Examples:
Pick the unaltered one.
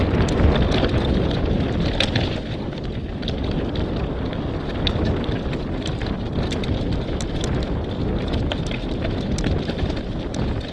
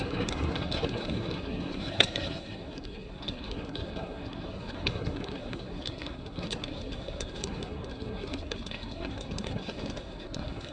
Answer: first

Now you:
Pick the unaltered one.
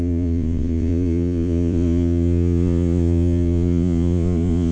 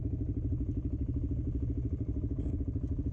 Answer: second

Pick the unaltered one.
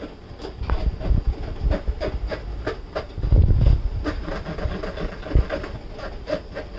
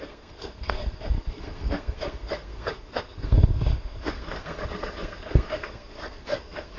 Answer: first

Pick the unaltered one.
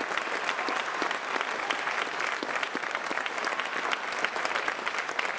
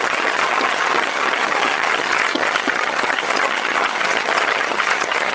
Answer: first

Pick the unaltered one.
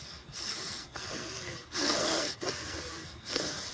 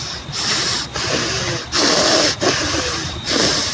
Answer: second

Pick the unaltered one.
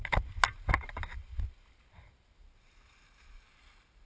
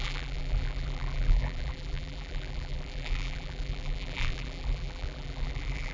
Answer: first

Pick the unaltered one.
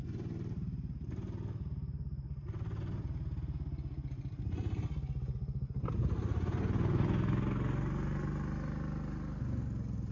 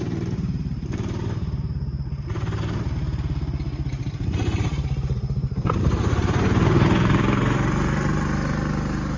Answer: first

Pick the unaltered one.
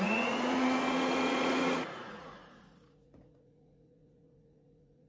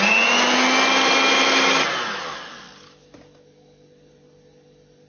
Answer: second